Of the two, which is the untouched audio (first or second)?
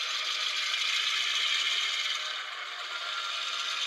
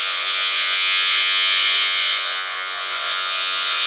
first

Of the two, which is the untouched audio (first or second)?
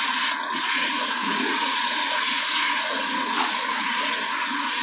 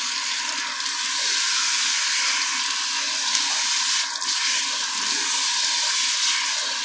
second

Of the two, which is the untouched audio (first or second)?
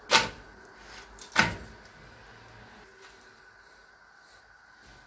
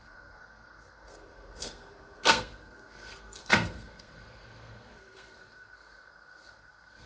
first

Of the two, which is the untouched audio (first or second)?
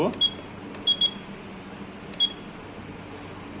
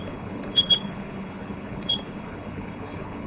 first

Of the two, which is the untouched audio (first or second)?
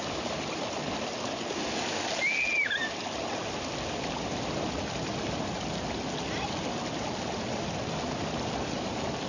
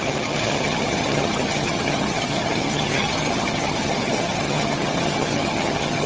first